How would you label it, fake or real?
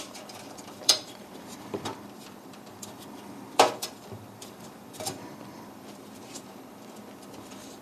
fake